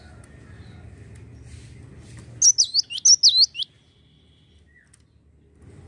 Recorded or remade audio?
recorded